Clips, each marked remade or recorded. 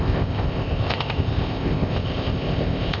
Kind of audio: remade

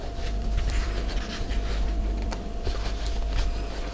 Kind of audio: remade